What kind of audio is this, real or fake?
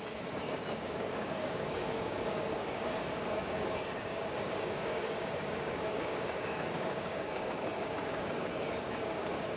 fake